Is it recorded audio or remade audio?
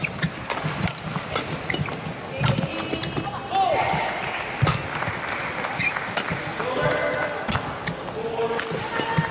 recorded